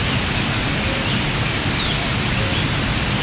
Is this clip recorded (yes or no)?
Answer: yes